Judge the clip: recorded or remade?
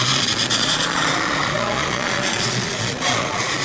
remade